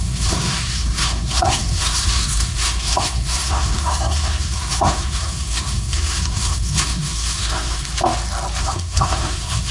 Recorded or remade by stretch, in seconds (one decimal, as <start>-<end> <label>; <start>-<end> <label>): 0.0-7.9 remade; 7.9-8.6 recorded; 8.6-9.7 remade